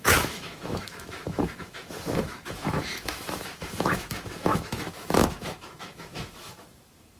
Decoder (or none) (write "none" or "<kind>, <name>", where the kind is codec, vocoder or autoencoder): autoencoder, DAC-VAE